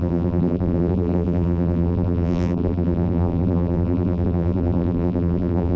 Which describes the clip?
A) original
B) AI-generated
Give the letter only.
B